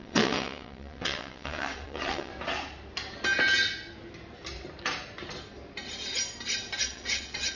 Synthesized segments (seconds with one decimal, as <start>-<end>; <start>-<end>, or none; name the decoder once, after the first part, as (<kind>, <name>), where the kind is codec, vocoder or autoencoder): 0.0-2.3 (vocoder, WaveNeXt); 6.8-7.5